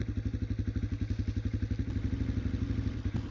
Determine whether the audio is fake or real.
real